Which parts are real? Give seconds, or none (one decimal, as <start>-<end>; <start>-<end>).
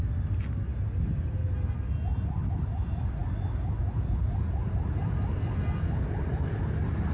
0.0-7.1